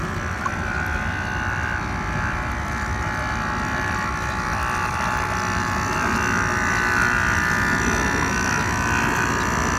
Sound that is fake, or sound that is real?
real